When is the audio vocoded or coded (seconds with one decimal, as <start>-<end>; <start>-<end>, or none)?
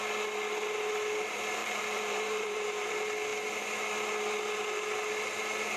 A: 1.6-2.9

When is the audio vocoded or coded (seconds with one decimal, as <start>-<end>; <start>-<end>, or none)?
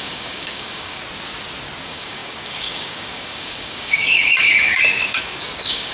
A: 0.0-1.0; 1.8-5.9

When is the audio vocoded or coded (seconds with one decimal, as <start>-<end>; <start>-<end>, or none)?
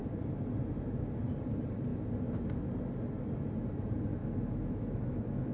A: 4.2-5.0